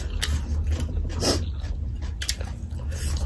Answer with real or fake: real